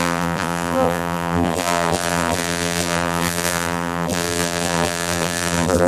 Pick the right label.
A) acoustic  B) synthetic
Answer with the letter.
B